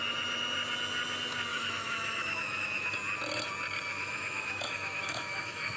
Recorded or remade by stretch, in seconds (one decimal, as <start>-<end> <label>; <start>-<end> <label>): 0.0-1.5 recorded; 1.5-2.9 remade; 2.9-3.9 recorded; 3.9-5.8 remade